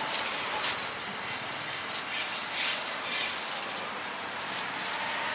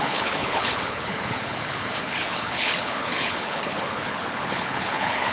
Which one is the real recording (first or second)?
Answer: first